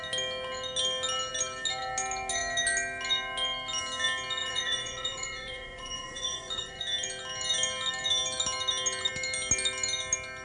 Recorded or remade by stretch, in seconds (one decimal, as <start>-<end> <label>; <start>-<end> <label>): 0.0-4.4 recorded; 4.4-6.8 remade; 6.8-10.4 recorded